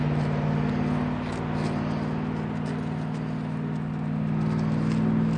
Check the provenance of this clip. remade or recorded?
recorded